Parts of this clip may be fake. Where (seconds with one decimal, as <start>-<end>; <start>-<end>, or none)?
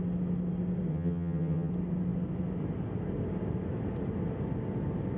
0.9-1.7